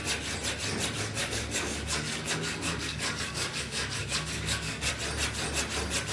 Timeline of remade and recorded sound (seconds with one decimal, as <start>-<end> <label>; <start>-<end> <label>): 0.0-1.2 recorded; 1.2-4.9 remade; 4.9-6.1 recorded